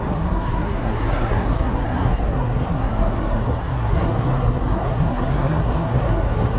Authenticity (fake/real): fake